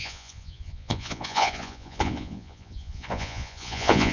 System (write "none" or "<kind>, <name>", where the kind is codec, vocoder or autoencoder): vocoder, Vocos